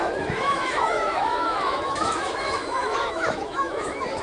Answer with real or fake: fake